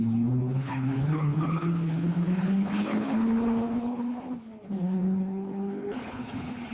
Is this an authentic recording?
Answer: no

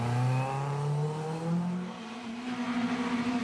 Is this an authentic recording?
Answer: yes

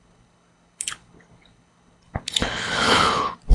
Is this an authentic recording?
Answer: no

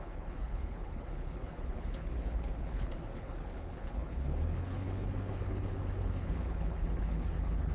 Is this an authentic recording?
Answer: no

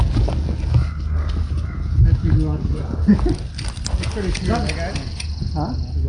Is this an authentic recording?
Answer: yes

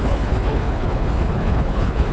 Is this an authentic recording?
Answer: no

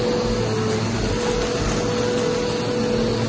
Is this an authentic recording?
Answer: yes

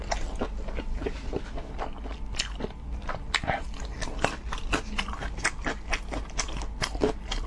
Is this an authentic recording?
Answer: yes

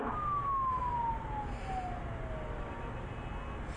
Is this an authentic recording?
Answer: yes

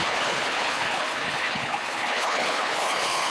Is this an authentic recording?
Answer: no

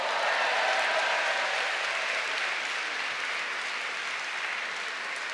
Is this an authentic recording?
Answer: yes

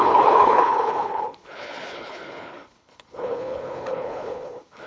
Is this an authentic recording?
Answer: no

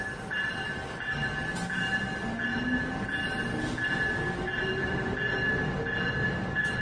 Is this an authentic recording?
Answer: yes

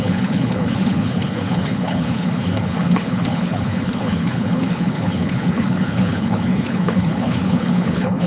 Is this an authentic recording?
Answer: no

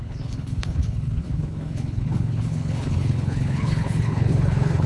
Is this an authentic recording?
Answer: no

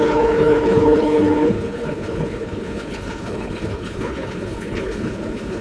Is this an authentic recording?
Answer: no